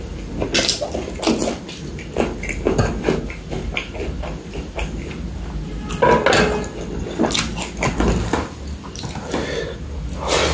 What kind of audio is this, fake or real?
real